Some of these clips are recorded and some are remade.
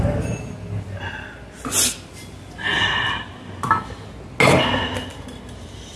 recorded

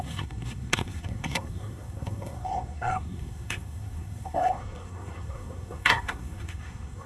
remade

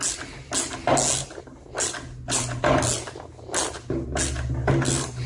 recorded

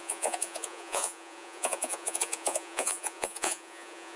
remade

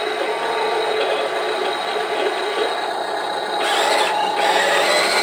recorded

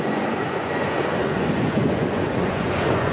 remade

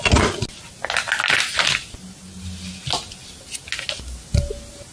recorded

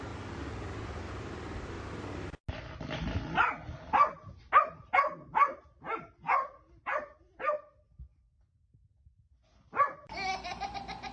recorded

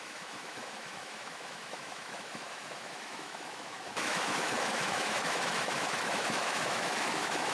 remade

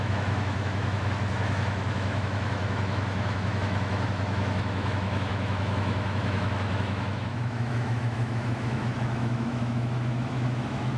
remade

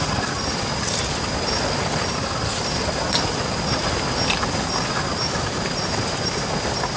recorded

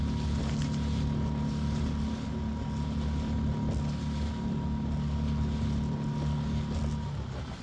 recorded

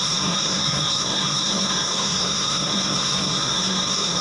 remade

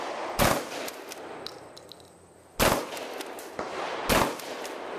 recorded